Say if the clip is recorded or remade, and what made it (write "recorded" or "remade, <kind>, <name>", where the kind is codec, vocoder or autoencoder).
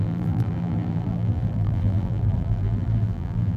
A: remade, vocoder, BigVGAN v2